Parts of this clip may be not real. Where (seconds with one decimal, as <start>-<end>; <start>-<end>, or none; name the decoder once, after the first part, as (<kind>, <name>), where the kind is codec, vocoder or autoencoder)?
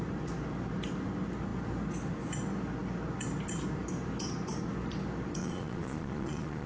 5.4-6.7 (vocoder, Vocos)